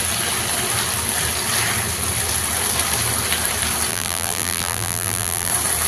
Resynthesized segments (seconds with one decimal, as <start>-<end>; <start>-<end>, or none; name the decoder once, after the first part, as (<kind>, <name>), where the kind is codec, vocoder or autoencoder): 3.9-5.5 (vocoder, BigVGAN v2)